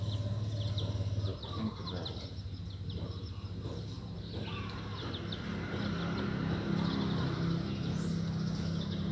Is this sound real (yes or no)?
yes